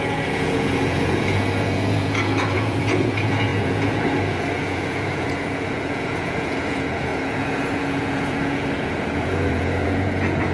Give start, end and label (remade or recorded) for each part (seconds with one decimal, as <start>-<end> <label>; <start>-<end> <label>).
0.0-10.5 remade